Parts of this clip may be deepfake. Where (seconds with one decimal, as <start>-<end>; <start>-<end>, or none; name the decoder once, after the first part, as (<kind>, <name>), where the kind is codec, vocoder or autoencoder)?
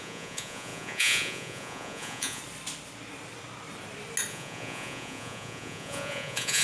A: 0.0-2.4 (vocoder, Vocos); 4.3-6.6